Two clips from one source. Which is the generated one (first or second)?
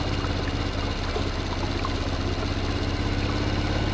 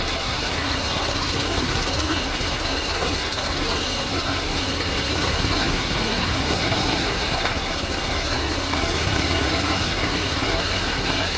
second